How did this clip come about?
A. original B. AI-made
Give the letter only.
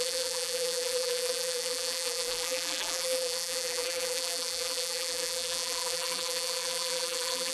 B